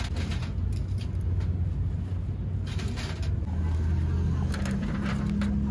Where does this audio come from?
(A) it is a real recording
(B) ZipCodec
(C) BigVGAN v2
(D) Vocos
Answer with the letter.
A